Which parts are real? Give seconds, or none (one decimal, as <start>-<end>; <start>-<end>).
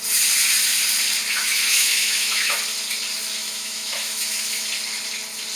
0.0-1.3; 2.6-3.4; 4.7-5.6